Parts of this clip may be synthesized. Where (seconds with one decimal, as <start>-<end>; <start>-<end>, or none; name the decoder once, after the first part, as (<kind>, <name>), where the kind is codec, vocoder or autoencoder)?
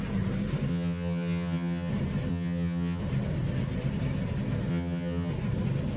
0.7-1.9 (vocoder, HiFi-GAN); 2.3-3.0; 4.7-5.3